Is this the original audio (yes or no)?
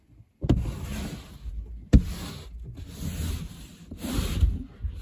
yes